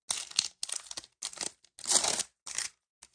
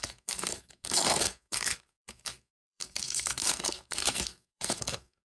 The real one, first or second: first